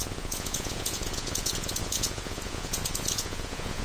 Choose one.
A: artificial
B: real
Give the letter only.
A